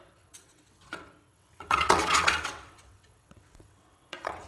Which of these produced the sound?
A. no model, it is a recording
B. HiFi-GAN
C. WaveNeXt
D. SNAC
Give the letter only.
C